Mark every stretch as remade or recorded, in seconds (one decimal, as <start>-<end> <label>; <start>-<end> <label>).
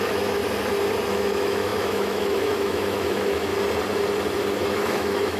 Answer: 0.0-0.4 remade; 0.4-1.1 recorded; 1.1-3.5 remade; 3.5-4.7 recorded; 4.7-5.4 remade